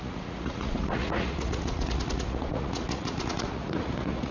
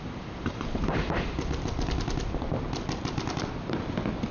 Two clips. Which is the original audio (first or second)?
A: second